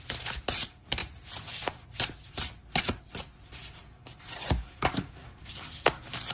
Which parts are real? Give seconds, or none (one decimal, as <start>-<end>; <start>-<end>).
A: 0.0-6.3